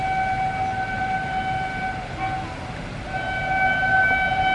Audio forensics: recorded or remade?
recorded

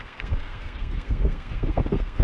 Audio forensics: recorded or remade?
remade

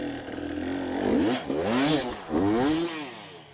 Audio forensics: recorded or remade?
recorded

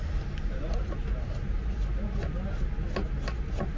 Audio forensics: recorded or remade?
recorded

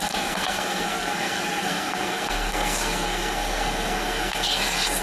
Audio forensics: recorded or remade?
remade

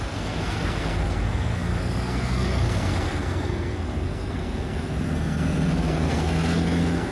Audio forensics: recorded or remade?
remade